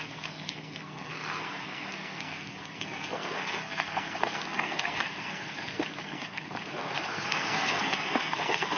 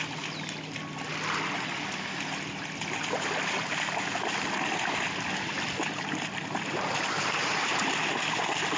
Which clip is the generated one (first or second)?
first